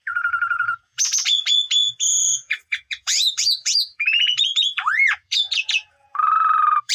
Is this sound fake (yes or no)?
yes